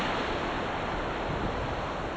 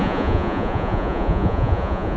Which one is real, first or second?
first